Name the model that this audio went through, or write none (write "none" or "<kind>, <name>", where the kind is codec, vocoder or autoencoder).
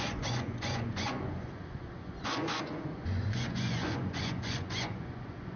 vocoder, Vocos